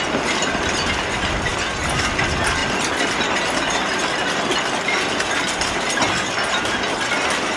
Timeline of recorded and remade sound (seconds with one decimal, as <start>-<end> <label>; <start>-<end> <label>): 0.0-1.5 recorded; 1.5-2.1 remade; 2.1-7.6 recorded